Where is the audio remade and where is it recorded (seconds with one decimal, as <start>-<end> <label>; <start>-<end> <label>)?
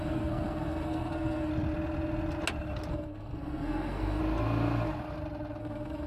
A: 0.0-1.5 remade; 1.5-2.9 recorded; 2.9-4.2 remade; 4.2-5.6 recorded; 5.6-6.1 remade